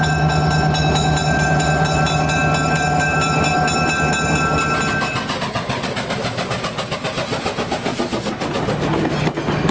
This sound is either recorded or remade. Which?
recorded